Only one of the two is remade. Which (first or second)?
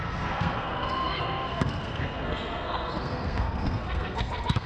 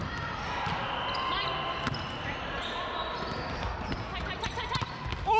first